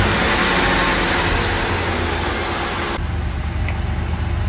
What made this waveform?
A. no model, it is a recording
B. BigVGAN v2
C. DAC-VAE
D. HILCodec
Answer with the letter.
A